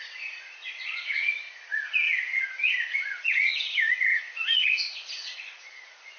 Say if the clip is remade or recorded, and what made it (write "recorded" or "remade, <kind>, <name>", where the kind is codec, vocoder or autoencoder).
remade, vocoder, Vocos